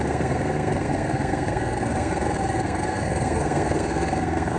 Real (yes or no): no